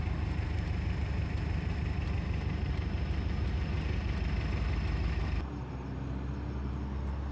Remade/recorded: recorded